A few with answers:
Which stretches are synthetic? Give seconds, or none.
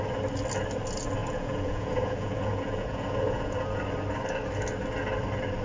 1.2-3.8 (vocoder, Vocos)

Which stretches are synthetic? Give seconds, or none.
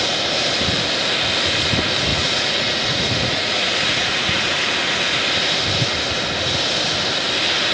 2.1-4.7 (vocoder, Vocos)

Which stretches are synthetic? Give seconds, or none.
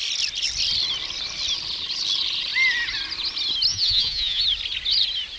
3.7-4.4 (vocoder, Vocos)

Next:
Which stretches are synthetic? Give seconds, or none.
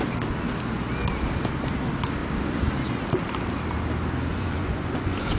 4.3-5.4 (vocoder, Vocos)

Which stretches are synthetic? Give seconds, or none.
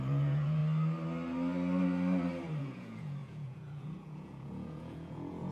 0.0-0.6 (vocoder, Vocos); 2.6-5.5